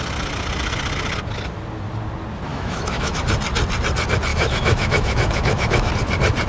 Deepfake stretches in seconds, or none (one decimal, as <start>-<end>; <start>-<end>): 2.5-3.2; 4.3-5.9